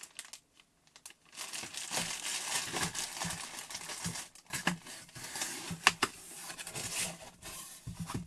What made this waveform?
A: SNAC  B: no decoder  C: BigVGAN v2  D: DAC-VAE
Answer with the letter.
B